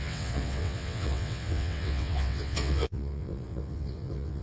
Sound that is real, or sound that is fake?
fake